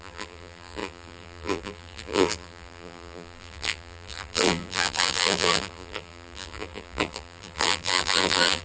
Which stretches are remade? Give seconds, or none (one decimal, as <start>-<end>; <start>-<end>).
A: 0.0-8.6